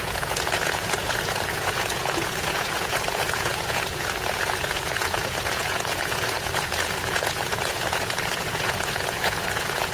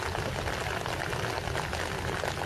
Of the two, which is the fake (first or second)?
first